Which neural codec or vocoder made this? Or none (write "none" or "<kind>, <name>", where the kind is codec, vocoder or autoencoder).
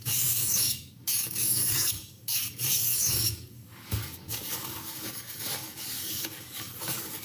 codec, DAC